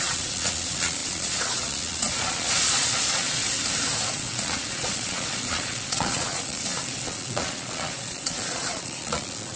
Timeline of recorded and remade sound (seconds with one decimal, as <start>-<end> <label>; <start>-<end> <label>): 0.0-3.4 remade; 3.4-4.1 recorded; 4.1-9.6 remade